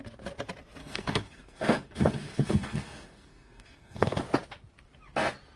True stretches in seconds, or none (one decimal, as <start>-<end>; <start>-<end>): 0.0-0.8; 4.2-5.6